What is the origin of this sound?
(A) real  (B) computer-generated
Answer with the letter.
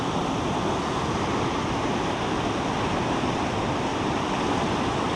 A